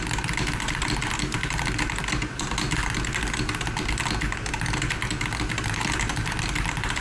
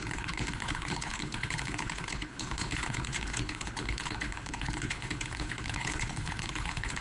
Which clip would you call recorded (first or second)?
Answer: first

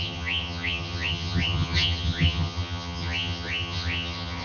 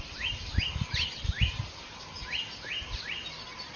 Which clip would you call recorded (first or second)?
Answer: second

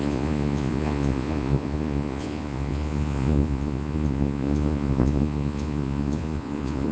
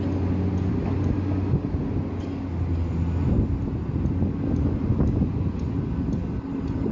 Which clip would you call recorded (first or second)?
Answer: second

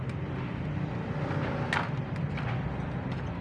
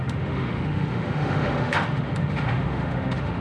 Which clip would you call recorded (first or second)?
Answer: first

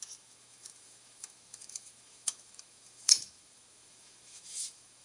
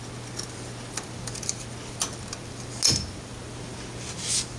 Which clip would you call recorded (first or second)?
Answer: second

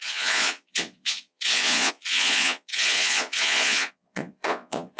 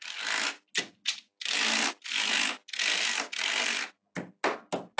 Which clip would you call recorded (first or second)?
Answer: second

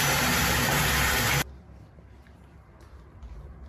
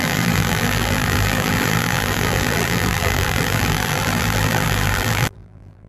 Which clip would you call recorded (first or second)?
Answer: first